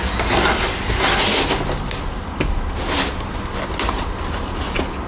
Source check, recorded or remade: recorded